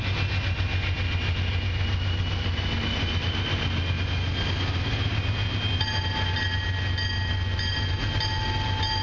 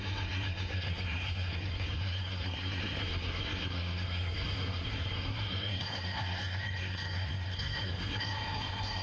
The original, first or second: first